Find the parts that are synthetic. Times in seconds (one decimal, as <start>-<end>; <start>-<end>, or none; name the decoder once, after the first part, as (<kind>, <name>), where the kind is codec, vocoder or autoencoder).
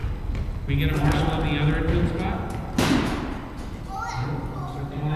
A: none